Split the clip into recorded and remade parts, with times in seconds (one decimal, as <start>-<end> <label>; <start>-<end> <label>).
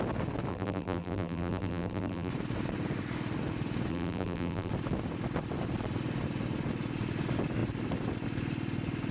0.0-0.5 recorded; 0.5-2.3 remade; 2.3-3.9 recorded; 3.9-4.7 remade; 4.7-9.1 recorded